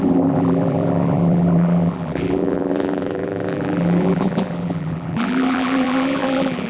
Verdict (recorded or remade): remade